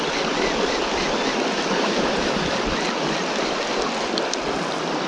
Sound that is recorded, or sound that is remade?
recorded